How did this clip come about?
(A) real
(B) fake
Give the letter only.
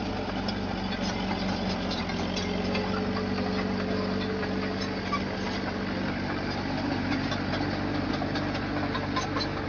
A